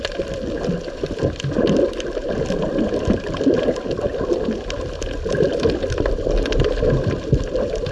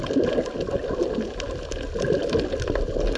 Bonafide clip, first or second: second